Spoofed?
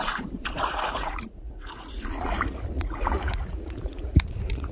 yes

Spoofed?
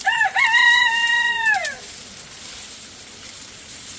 no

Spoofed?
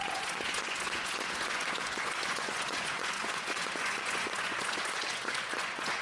yes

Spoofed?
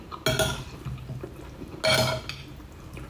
no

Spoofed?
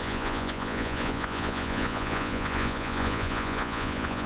yes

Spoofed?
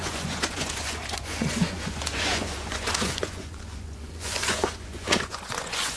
yes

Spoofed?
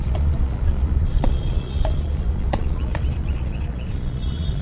yes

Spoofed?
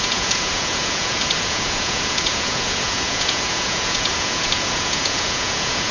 yes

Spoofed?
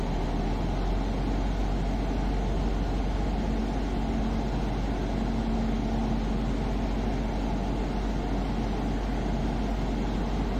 no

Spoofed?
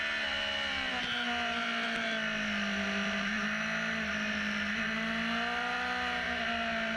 no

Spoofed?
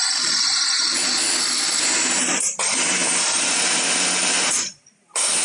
no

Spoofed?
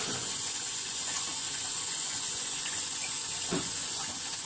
yes